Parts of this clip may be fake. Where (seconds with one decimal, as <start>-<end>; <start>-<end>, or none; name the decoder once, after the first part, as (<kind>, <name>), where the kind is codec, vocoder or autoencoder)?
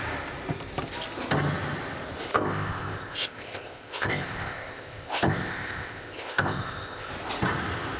2.3-7.1 (codec, ZipCodec)